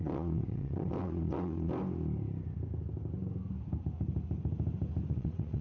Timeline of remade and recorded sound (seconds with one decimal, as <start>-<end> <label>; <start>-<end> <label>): 0.0-1.7 remade; 1.7-5.1 recorded; 5.1-5.6 remade